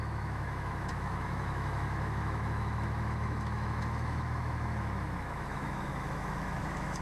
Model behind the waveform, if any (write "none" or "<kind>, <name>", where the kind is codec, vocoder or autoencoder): autoencoder, DAC-VAE